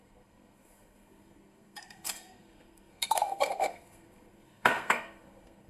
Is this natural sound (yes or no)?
no